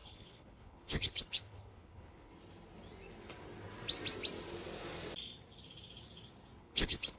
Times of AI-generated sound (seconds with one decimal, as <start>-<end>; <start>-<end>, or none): 0.0-2.3; 6.6-7.2